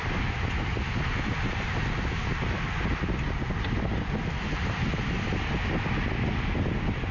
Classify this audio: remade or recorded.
recorded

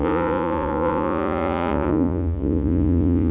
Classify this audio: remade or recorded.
remade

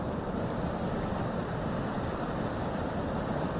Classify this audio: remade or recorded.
recorded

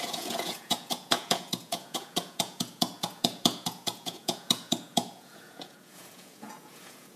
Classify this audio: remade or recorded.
remade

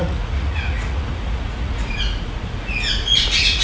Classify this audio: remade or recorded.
remade